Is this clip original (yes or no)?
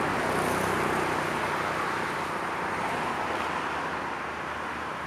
yes